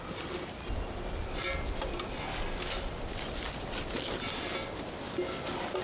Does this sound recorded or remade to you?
recorded